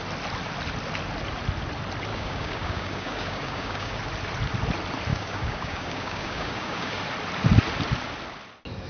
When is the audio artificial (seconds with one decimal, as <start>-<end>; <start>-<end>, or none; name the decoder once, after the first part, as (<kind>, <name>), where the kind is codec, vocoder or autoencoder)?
2.1-4.0 (codec, DAC); 5.1-7.0

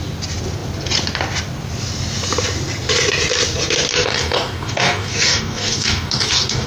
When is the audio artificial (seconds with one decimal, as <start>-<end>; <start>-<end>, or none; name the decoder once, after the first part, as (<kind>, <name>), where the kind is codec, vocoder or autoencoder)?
3.9-6.7 (codec, DAC)